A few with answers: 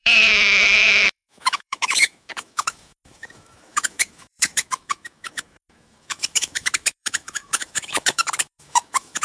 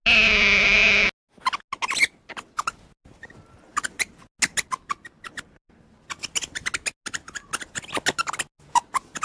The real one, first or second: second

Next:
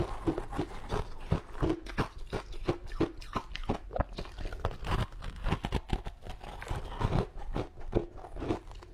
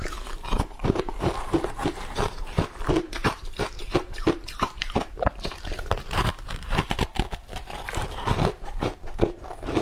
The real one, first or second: first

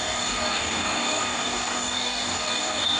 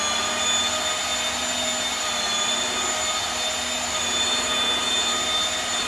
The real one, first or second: second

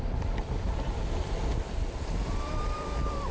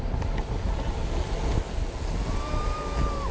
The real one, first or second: second